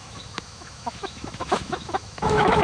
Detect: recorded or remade remade